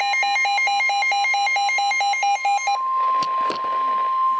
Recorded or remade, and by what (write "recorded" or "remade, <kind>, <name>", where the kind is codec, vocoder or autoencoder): recorded